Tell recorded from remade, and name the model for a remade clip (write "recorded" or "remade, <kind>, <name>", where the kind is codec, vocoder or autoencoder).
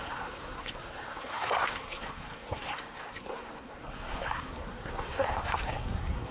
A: remade, codec, SNAC